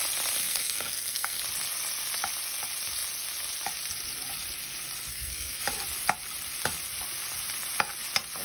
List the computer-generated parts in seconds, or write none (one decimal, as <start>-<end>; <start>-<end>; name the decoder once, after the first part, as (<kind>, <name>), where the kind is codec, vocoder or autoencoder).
0.4-1.4 (codec, SNAC); 5.1-5.6